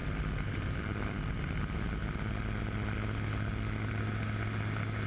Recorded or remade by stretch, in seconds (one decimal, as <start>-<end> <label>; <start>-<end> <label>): 0.0-1.6 remade; 1.6-5.1 recorded